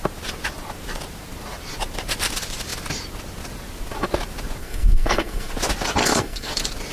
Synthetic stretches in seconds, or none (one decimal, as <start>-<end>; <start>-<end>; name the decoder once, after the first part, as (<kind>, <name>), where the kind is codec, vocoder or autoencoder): 4.6-5.5 (codec, SNAC); 6.0-6.5